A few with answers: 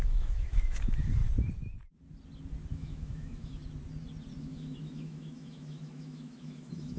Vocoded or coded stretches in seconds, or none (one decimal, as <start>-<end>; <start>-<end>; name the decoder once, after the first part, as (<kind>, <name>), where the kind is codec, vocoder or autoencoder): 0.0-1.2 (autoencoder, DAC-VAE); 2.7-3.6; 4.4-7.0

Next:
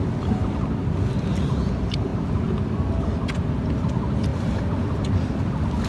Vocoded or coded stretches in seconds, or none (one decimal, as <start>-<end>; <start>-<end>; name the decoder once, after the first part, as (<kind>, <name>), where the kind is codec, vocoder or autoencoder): none

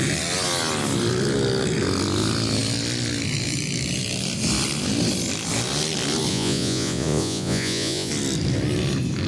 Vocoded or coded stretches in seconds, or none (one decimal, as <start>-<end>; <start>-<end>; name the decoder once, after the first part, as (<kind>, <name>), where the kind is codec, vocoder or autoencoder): 6.3-8.1 (vocoder, Vocos)